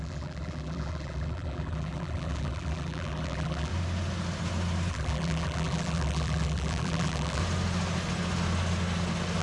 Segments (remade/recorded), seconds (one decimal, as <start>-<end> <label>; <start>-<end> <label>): 0.0-3.7 remade; 3.7-4.9 recorded; 4.9-7.4 remade; 7.4-9.4 recorded